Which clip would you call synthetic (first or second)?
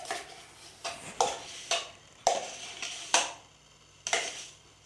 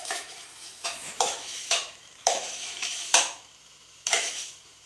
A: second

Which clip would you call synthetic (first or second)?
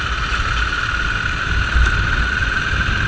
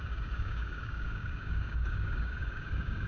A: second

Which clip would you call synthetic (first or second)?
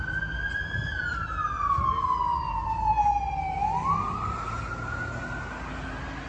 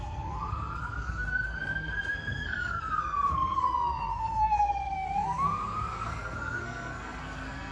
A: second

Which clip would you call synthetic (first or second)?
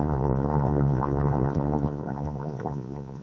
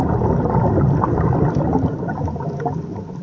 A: first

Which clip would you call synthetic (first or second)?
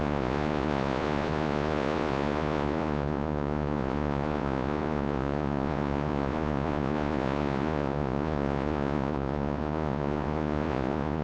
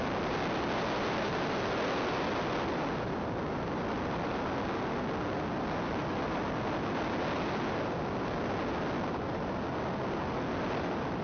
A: first